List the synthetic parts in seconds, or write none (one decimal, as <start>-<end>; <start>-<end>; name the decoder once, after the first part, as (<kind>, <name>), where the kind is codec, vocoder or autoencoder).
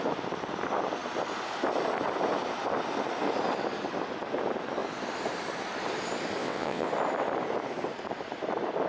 6.4-6.9 (vocoder, WaveNeXt)